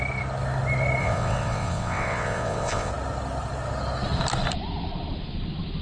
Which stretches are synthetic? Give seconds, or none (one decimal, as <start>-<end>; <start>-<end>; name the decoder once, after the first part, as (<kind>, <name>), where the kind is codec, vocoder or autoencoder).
1.0-2.9 (vocoder, WaveNeXt)